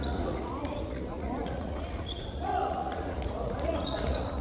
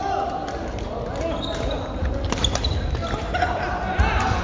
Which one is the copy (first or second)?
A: first